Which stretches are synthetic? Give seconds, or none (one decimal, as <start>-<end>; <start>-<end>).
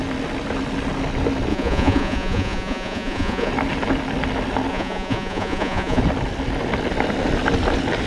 1.5-3.5; 4.7-6.0